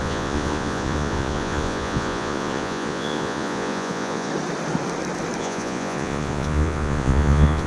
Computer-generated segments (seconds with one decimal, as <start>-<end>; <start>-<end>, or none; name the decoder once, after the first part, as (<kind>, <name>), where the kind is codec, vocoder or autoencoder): 0.0-4.3 (vocoder, Vocos); 5.4-7.7